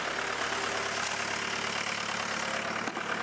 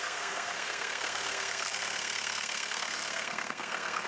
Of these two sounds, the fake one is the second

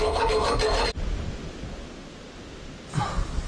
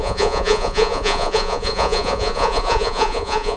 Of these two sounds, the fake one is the second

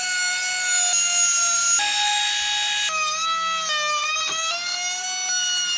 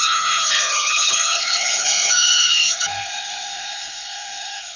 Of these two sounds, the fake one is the second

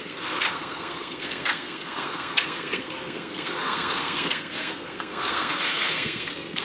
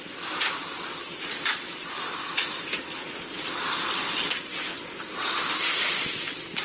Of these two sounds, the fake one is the first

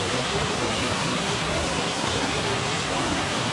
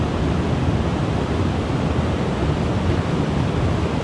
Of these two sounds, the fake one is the first